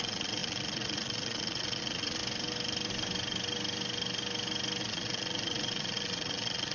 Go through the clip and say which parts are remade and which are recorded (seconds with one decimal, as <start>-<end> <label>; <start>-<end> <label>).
0.0-2.2 remade; 2.2-4.8 recorded; 4.8-6.7 remade